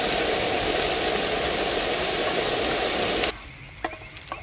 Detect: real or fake real